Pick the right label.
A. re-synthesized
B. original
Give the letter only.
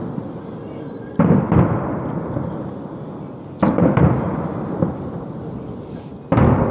B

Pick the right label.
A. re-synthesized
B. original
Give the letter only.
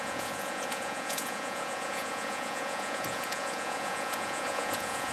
A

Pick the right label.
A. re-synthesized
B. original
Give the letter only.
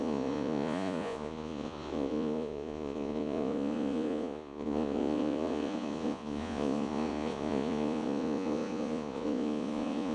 A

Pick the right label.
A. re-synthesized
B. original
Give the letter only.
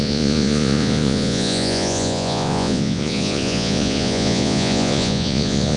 A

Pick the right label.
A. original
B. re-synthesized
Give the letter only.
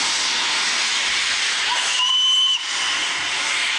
A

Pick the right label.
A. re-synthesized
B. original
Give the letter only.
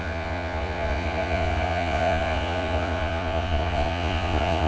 A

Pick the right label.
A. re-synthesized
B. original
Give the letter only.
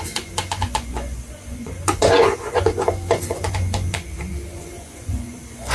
A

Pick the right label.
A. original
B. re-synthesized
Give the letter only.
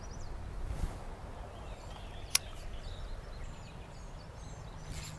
A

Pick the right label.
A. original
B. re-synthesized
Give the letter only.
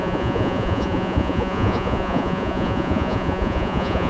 B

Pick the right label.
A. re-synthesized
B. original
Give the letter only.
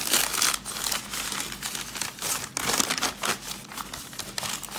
B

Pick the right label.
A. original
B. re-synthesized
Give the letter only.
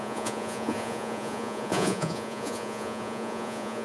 B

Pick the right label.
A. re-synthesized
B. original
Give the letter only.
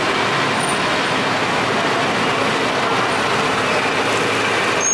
B